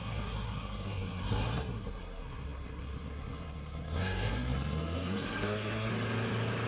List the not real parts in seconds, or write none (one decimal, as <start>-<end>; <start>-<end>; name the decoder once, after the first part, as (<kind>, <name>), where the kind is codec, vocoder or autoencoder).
0.0-5.9 (codec, SNAC)